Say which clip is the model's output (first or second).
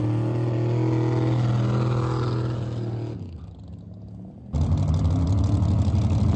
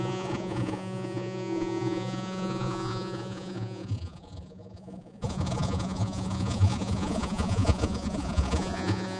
second